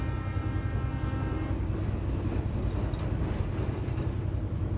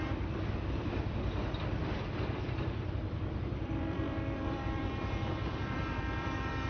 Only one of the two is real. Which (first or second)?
first